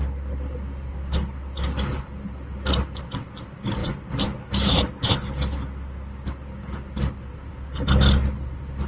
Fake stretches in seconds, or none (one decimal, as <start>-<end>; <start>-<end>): none